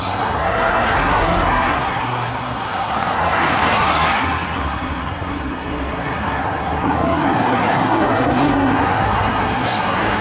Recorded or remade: remade